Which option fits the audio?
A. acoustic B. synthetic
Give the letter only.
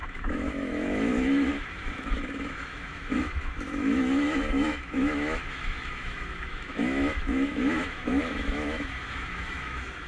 B